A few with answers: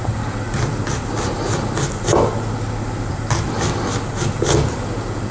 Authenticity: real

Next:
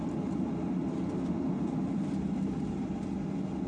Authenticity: real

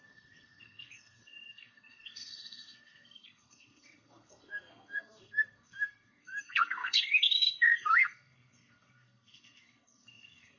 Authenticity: fake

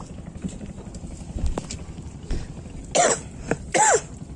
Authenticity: real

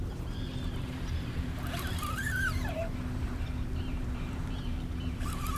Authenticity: fake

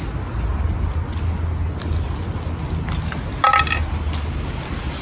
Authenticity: real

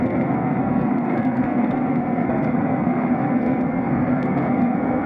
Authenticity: fake